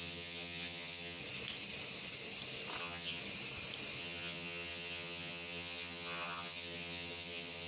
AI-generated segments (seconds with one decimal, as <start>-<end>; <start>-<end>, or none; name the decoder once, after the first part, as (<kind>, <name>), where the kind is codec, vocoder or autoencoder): 0.0-1.2 (vocoder, HiFi-GAN); 2.8-3.2; 4.0-7.7